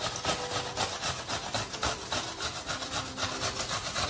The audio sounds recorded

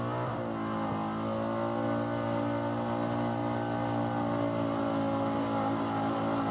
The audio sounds recorded